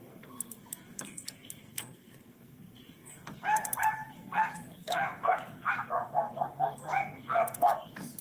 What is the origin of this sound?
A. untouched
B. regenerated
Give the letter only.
B